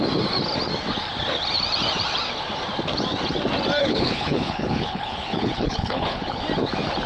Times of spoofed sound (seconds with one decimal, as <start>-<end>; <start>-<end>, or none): 3.8-6.4